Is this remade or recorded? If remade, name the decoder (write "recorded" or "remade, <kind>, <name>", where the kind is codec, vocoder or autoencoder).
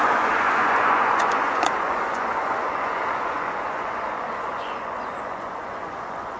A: remade, vocoder, Vocos